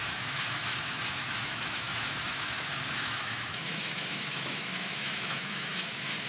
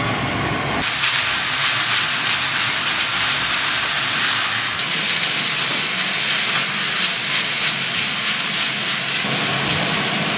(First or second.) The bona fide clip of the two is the second